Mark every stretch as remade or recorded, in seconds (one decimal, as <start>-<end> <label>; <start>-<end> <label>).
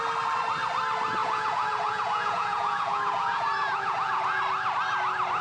0.0-1.2 recorded; 1.2-4.4 remade; 4.4-5.4 recorded